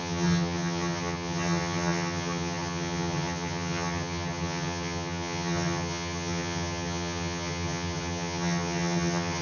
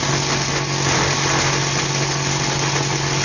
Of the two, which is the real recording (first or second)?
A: second